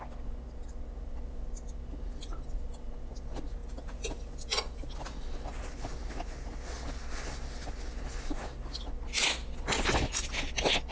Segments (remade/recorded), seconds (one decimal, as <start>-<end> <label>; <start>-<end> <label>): 0.0-10.9 recorded